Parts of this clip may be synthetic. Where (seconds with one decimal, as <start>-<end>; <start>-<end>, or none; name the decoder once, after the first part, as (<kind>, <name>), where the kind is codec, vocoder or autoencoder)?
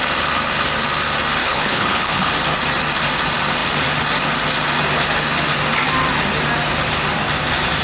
1.4-2.3 (codec, HILCodec)